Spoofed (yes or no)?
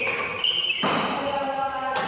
no